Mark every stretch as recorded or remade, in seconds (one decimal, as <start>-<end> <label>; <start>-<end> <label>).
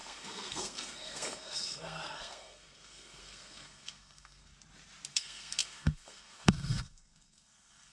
0.0-4.5 remade; 4.5-5.1 recorded; 5.1-7.9 remade